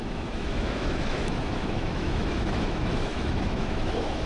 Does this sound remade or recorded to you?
remade